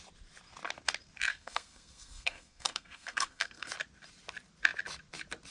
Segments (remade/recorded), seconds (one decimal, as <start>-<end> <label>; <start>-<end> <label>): 0.0-1.3 recorded; 1.3-3.7 remade; 3.7-5.5 recorded